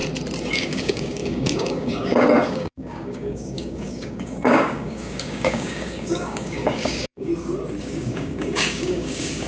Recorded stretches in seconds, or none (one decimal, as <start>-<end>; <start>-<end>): 0.0-0.5; 7.3-7.8